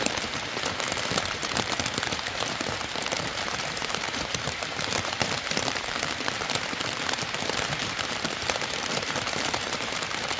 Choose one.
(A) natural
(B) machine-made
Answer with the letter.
B